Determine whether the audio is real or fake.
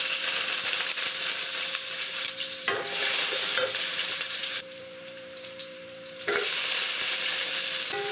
fake